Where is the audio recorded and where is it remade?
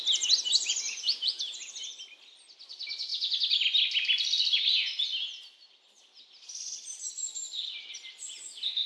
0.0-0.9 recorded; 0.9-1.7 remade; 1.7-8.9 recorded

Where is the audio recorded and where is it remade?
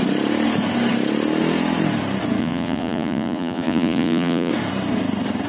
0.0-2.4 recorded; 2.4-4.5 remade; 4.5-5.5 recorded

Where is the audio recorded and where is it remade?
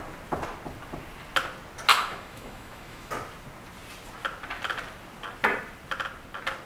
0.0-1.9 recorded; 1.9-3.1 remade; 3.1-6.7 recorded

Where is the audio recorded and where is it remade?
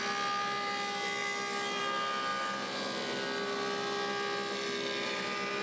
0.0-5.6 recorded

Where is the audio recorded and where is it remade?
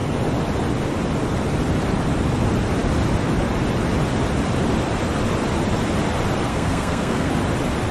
0.0-6.5 recorded; 6.5-7.3 remade; 7.3-7.9 recorded